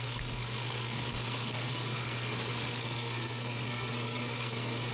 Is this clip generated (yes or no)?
yes